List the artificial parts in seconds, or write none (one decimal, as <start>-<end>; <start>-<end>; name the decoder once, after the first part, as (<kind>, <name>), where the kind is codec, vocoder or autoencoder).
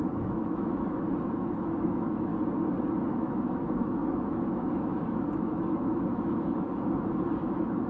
0.0-2.3 (autoencoder, DAC-VAE); 3.1-7.9